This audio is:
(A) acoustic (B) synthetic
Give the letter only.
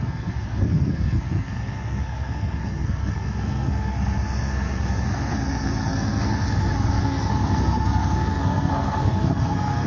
B